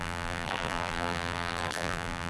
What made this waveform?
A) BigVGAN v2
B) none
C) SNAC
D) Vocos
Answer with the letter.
A